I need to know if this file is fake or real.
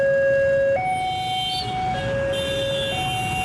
real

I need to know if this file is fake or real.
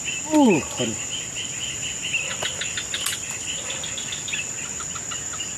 real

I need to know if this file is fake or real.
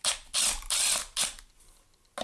real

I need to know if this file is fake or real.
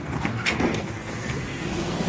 fake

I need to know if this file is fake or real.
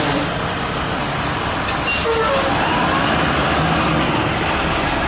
real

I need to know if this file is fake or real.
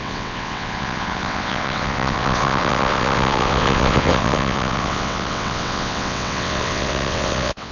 fake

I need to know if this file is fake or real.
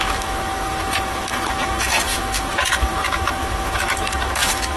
fake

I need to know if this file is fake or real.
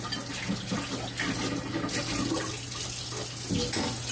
real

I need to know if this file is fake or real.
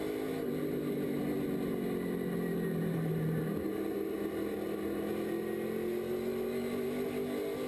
real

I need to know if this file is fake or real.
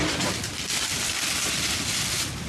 real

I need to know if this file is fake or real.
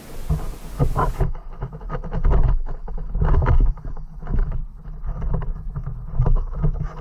real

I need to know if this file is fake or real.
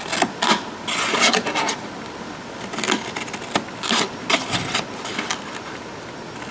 real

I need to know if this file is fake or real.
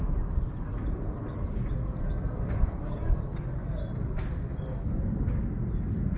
real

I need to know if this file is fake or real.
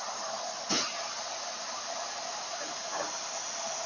real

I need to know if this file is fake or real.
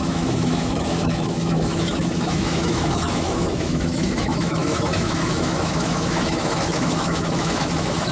fake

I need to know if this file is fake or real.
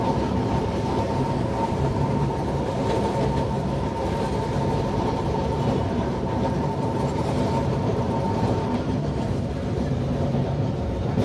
fake